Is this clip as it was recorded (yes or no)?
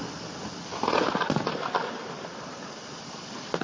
yes